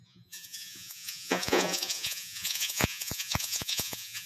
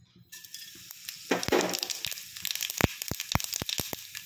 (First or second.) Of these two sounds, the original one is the second